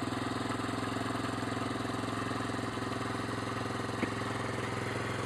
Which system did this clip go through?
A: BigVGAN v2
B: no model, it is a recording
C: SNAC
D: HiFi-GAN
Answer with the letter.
B